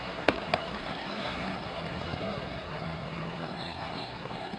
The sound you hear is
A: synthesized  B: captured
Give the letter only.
A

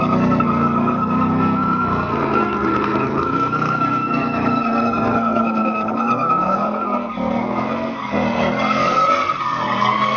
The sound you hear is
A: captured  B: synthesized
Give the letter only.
B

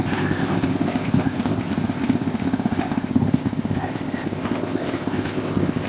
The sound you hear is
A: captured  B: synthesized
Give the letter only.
B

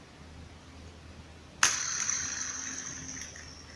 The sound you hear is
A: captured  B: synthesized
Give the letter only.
A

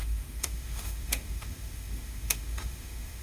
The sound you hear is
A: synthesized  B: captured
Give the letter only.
A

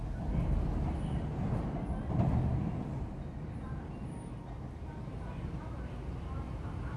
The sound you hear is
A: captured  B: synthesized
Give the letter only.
A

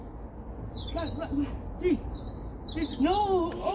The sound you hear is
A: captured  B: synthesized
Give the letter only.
A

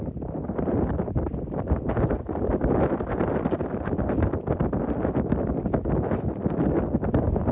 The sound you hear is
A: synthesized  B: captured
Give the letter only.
B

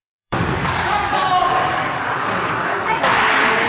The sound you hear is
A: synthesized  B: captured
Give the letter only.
A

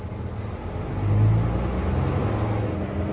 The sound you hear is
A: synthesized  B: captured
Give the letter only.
B